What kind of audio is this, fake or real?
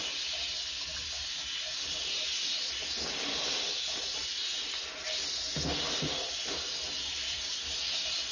real